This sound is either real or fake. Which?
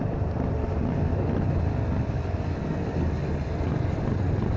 real